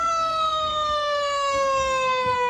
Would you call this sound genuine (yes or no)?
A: no